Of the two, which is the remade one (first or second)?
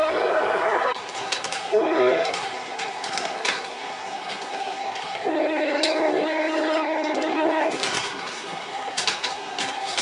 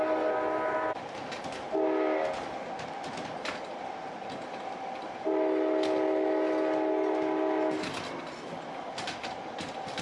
first